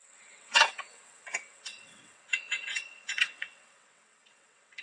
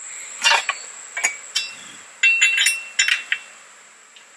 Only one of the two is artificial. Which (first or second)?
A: first